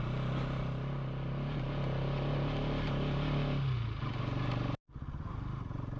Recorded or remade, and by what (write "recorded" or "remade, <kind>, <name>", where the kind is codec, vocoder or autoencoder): recorded